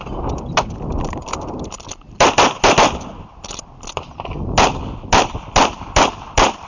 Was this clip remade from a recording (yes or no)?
no